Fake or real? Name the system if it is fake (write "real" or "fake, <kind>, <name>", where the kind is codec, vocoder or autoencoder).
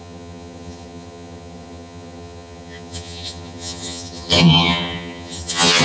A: fake, vocoder, HiFi-GAN